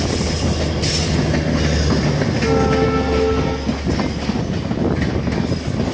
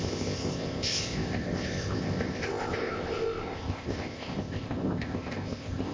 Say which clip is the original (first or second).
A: first